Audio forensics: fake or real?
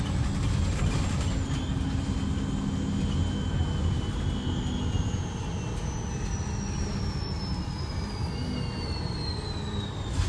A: real